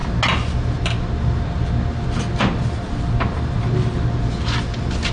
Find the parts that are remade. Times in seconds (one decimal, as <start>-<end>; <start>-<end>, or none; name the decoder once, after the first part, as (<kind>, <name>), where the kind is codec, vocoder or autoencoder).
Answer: none